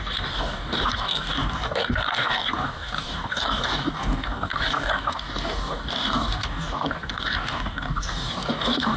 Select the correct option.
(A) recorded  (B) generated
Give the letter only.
B